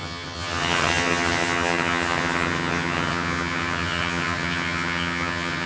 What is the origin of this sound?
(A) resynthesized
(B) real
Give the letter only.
A